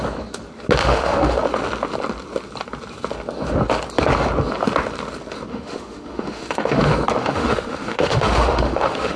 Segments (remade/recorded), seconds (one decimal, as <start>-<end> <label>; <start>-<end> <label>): 0.0-0.8 recorded; 0.8-1.4 remade; 1.4-5.5 recorded; 5.5-6.8 remade; 6.8-7.2 recorded; 7.2-9.2 remade

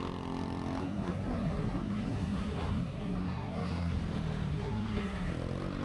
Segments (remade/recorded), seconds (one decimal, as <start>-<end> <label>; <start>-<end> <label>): 0.0-0.8 recorded; 0.8-4.0 remade; 4.0-4.5 recorded; 4.5-5.3 remade; 5.3-5.8 recorded

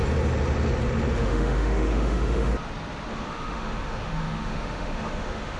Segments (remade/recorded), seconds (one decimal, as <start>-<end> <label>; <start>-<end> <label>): 0.0-1.1 recorded; 1.1-2.5 remade; 2.5-3.1 recorded; 3.1-5.6 remade

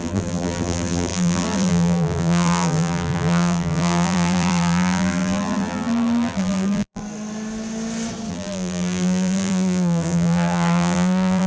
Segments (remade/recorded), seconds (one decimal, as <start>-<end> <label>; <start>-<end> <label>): 0.0-7.0 remade; 7.0-8.3 recorded; 8.3-11.5 remade

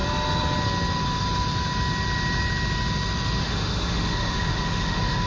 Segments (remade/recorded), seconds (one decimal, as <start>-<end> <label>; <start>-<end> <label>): 0.0-3.4 recorded; 3.4-5.3 remade